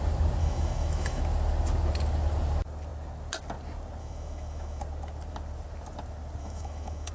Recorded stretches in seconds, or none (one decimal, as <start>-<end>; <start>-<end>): 0.0-0.4; 1.2-4.0; 4.8-6.4